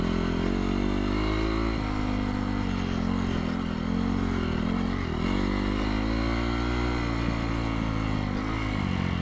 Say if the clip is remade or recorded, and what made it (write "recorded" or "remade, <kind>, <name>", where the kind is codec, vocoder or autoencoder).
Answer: recorded